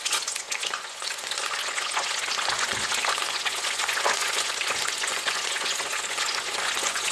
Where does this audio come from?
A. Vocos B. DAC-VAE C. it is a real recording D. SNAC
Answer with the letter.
A